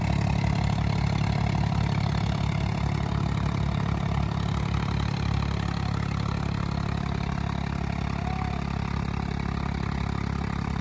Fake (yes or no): no